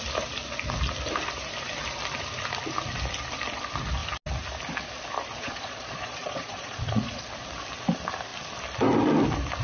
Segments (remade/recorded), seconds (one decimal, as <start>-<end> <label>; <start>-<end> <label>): 0.0-5.3 recorded; 5.3-7.2 remade; 7.2-9.6 recorded